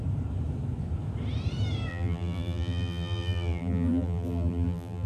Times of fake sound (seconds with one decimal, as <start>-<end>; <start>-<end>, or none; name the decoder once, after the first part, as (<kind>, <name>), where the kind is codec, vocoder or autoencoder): 1.9-5.1 (vocoder, BigVGAN v2)